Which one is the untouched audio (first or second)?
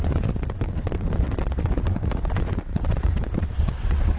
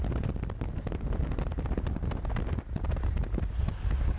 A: second